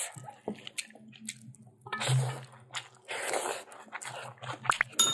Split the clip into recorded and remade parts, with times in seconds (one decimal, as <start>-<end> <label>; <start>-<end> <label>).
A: 0.0-5.1 recorded